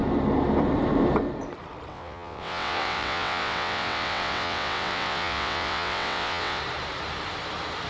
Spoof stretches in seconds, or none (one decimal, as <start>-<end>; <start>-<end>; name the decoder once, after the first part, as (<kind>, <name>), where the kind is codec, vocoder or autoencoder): 1.9-6.6 (vocoder, WaveNeXt)